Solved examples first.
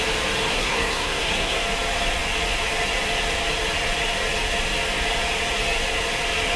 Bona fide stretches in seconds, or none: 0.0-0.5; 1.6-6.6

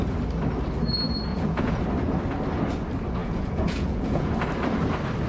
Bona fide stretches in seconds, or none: 0.0-1.3; 1.8-3.2; 4.3-5.3

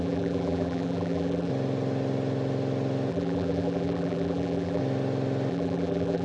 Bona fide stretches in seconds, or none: 1.5-3.1; 4.8-5.5

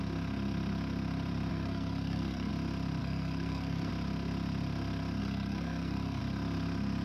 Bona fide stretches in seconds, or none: 0.0-1.5; 2.5-3.0; 3.9-5.2; 6.2-7.0

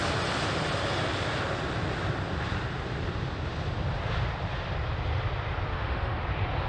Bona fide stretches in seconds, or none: 0.0-5.7; 6.2-6.7

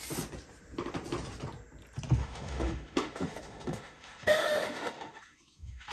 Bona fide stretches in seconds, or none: 0.0-2.2

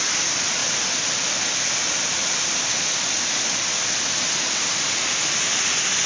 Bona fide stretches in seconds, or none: 0.0-6.1

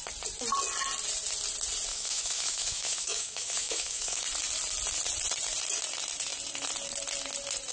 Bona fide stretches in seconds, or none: 0.0-1.9; 4.2-7.7